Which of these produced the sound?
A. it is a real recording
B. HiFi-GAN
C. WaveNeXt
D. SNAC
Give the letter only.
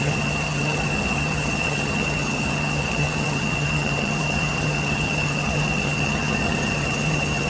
B